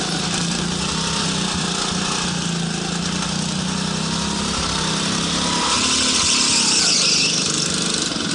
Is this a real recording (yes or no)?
yes